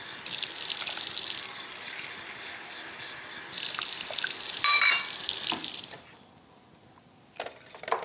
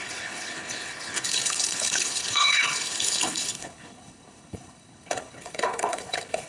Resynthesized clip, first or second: second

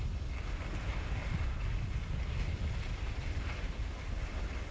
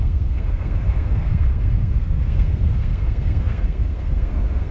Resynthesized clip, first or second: second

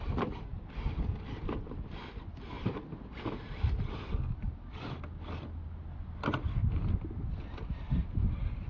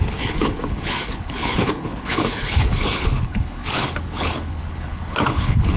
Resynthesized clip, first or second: second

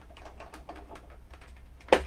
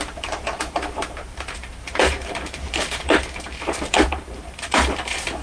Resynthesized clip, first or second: second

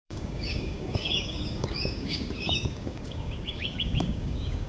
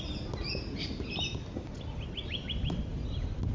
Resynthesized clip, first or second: first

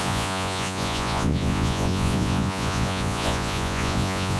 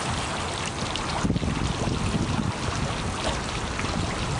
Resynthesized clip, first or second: first